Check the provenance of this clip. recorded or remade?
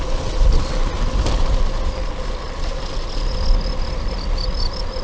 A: recorded